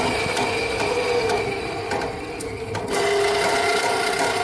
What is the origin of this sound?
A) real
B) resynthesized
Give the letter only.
A